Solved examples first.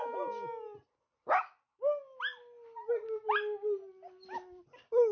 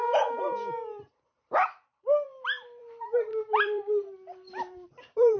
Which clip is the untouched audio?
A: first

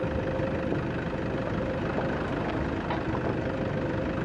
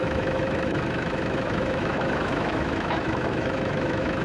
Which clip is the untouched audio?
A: first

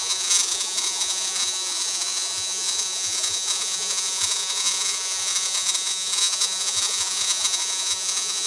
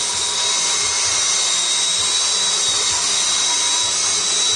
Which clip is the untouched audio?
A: second